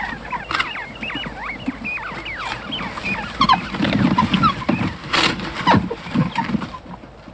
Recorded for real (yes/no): yes